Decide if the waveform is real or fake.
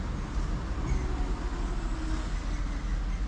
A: real